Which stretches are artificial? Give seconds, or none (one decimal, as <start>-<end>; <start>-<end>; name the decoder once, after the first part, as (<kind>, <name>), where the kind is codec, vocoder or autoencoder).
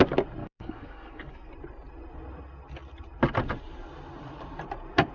0.4-1.5 (codec, DAC)